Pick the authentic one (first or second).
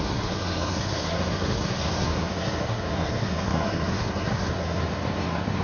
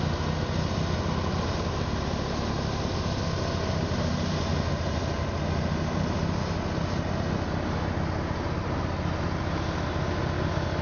second